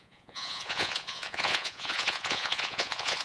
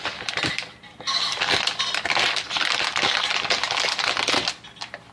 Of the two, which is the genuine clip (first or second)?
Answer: second